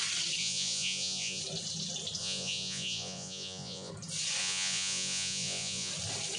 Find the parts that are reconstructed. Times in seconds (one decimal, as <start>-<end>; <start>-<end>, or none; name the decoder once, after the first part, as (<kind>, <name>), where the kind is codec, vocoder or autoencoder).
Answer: 0.4-1.4 (vocoder, Vocos); 2.2-3.9; 4.4-5.9